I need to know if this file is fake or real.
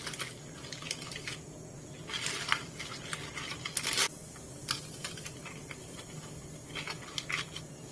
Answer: real